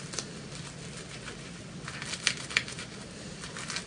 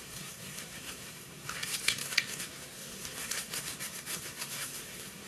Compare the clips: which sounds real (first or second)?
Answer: first